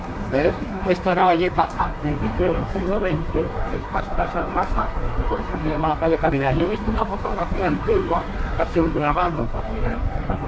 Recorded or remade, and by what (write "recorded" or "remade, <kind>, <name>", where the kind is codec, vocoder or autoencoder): remade, codec, SNAC